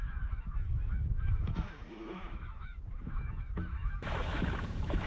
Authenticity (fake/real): fake